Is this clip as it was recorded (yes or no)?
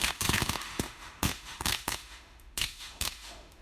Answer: no